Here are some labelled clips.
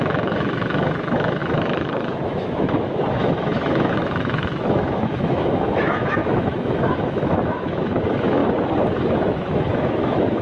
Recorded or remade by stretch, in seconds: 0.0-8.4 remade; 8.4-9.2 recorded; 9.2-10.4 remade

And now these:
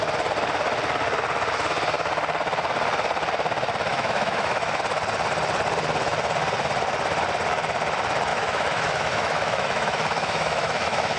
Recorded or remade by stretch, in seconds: 0.0-3.9 recorded; 3.9-4.8 remade; 4.8-8.3 recorded; 8.3-11.2 remade

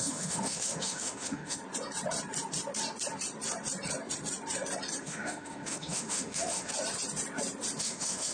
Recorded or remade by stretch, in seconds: 0.0-1.6 remade; 1.6-5.0 recorded; 5.0-6.7 remade; 6.7-7.8 recorded; 7.8-8.3 remade

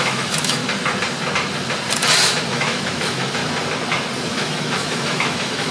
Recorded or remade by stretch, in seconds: 0.0-0.6 remade; 0.6-2.5 recorded; 2.5-3.4 remade; 3.4-4.3 recorded; 4.3-5.7 remade

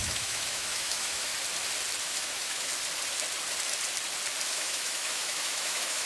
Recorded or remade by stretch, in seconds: 0.0-1.3 remade; 1.3-2.0 recorded; 2.0-2.7 remade; 2.7-4.5 recorded; 4.5-6.1 remade